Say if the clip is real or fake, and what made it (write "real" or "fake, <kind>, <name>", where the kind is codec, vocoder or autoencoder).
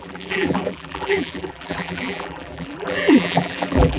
fake, vocoder, BigVGAN v2